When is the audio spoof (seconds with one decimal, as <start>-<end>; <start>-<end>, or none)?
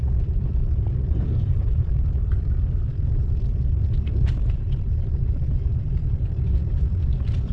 0.6-2.8